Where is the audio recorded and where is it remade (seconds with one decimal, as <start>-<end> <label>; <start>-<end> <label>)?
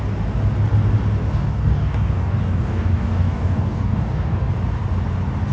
0.0-1.2 recorded; 1.2-4.5 remade; 4.5-5.5 recorded